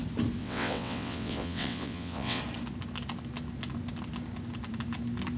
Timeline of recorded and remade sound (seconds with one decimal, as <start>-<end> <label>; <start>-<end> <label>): 0.0-0.4 recorded; 0.4-2.4 remade; 2.4-5.4 recorded